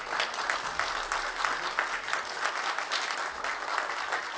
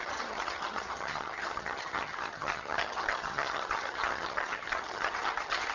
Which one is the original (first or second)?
first